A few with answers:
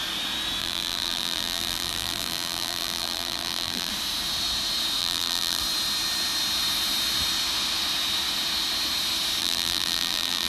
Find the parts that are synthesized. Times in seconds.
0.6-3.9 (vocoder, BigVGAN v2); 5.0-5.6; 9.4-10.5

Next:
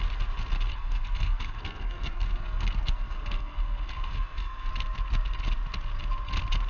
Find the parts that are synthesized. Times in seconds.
0.7-4.7 (codec, SNAC)